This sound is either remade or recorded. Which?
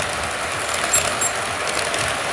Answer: recorded